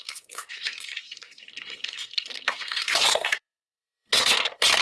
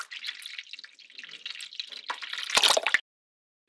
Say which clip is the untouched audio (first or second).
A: second